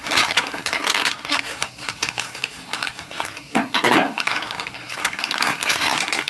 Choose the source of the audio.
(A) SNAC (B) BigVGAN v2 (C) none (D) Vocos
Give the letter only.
A